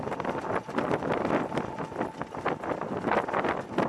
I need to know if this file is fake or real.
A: real